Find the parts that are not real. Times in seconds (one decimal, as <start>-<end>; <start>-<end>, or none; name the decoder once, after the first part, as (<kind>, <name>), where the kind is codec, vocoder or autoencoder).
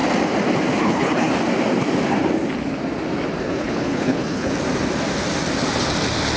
0.8-1.3 (codec, HILCodec); 3.4-4.5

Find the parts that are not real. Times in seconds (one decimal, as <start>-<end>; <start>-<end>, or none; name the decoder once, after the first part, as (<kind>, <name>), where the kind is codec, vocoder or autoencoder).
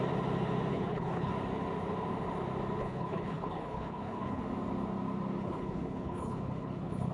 0.7-1.3 (codec, HILCodec); 2.8-4.4; 5.4-7.1